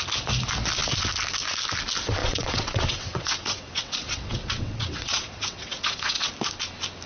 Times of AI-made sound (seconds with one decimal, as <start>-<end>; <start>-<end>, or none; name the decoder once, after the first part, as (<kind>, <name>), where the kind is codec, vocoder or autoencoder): 2.2-6.3 (vocoder, WaveNeXt)